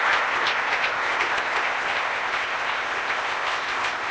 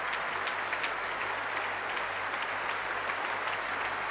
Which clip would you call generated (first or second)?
first